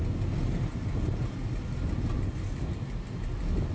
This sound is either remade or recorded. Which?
recorded